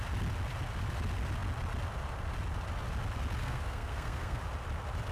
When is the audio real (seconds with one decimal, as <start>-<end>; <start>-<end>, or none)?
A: 0.0-3.4; 4.4-5.1